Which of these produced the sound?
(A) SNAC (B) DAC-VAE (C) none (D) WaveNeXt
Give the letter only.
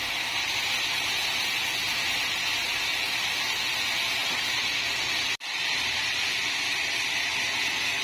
C